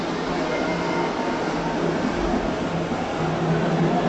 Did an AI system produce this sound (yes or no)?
no